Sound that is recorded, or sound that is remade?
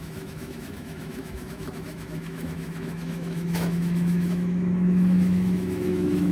remade